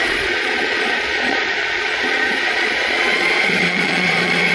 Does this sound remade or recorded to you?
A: remade